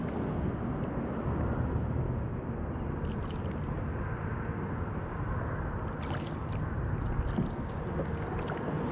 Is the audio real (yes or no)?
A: yes